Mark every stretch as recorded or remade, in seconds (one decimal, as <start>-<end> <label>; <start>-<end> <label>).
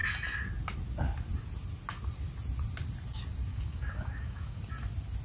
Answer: 0.0-3.5 recorded; 3.5-4.6 remade; 4.6-5.2 recorded